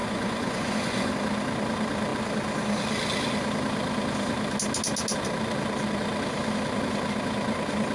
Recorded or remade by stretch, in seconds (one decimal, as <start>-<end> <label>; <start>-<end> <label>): 0.0-1.1 remade; 1.1-7.9 recorded